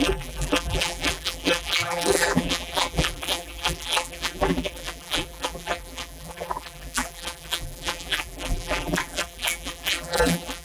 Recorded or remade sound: remade